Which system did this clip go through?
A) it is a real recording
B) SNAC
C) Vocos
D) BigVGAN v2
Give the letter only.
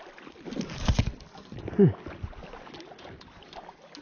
A